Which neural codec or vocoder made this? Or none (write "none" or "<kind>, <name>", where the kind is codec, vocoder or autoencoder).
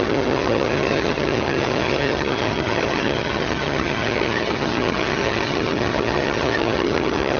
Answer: vocoder, HiFi-GAN